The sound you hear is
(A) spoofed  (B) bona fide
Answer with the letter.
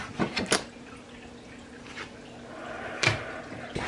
B